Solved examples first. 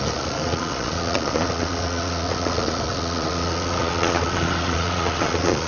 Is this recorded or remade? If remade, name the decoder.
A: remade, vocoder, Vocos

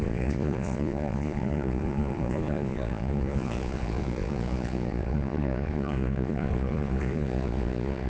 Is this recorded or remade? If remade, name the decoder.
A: remade, vocoder, Vocos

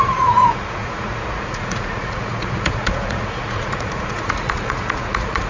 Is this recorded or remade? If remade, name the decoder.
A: remade, vocoder, Vocos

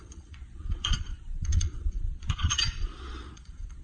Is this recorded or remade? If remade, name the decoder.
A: remade, vocoder, Vocos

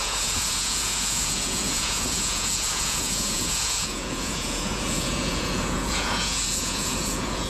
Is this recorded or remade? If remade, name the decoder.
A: remade, vocoder, Vocos